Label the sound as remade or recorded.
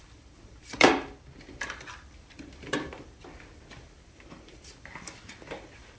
remade